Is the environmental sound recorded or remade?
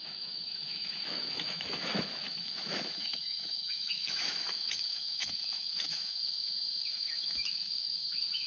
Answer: remade